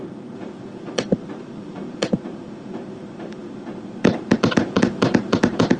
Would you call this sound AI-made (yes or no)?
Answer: yes